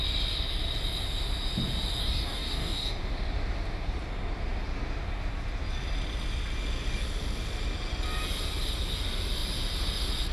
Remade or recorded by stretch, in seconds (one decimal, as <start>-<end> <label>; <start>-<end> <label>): 0.0-2.0 recorded; 2.0-3.0 remade; 3.0-10.3 recorded